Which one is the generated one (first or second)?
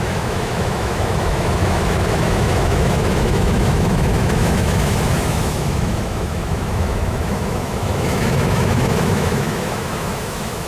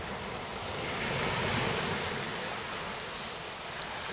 first